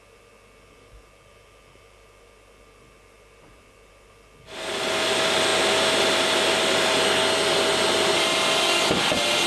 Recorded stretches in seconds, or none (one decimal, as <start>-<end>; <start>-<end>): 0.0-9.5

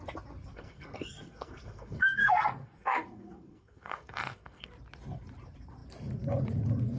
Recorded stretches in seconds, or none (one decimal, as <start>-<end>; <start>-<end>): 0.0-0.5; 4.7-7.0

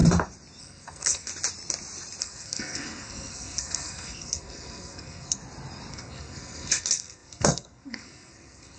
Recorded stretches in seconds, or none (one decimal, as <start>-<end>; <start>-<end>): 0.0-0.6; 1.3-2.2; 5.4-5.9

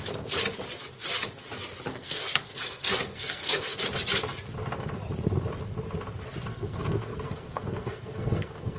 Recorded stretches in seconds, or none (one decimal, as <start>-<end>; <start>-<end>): 0.0-1.9; 3.8-6.5